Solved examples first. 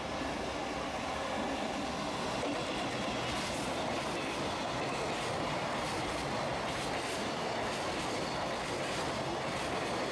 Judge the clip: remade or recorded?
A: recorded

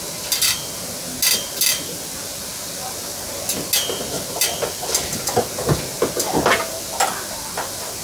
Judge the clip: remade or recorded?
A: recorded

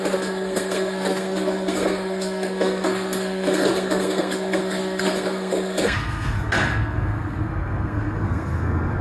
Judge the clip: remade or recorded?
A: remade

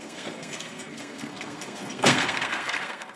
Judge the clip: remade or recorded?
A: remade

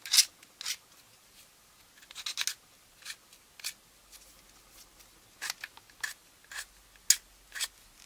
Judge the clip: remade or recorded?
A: recorded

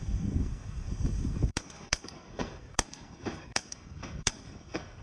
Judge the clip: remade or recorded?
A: remade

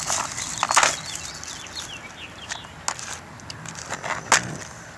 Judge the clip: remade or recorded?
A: recorded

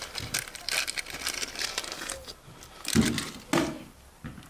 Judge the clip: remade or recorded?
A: recorded